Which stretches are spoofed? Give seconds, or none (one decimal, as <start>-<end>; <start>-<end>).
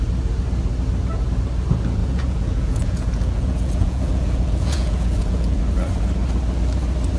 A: 2.0-5.6